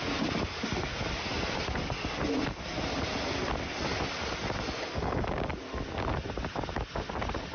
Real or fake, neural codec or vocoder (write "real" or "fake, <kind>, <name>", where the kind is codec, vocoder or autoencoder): real